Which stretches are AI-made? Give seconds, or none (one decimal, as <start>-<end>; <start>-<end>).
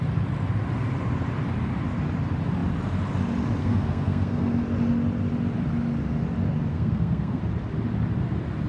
3.6-4.6; 6.7-7.4